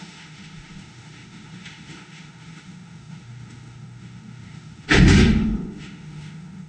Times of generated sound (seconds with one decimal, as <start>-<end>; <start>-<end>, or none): 0.0-6.7